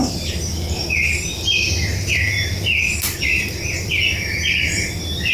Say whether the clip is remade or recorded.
recorded